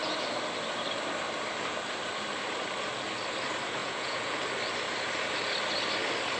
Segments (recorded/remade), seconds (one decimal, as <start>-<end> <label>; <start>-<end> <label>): 0.0-3.8 recorded; 3.8-4.4 remade; 4.4-6.4 recorded